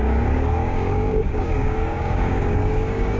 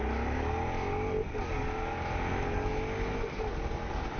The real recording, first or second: second